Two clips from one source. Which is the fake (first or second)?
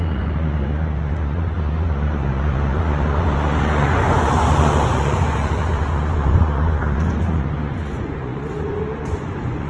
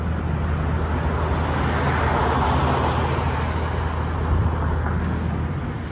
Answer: first